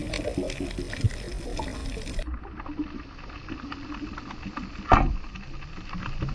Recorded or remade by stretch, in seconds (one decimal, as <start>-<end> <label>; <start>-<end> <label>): 0.0-6.3 recorded